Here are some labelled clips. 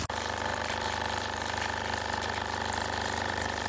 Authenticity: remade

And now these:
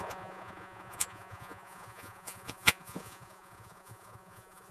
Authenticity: remade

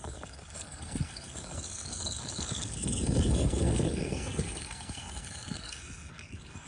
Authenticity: remade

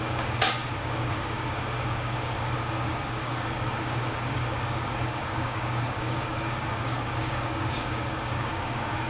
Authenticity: remade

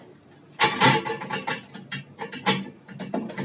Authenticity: recorded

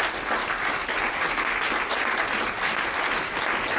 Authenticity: recorded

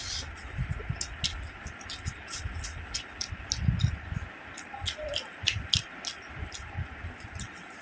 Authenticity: recorded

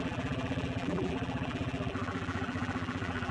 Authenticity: remade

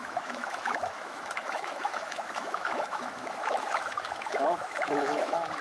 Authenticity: remade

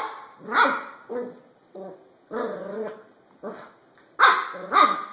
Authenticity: recorded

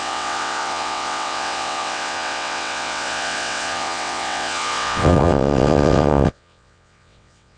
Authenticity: remade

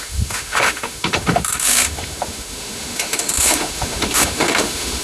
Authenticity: remade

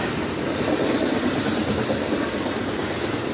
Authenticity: recorded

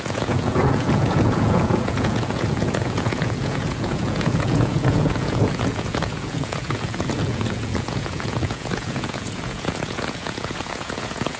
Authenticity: remade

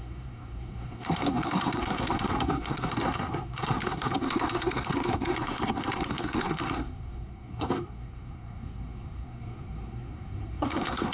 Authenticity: remade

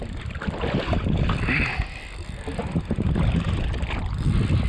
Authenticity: recorded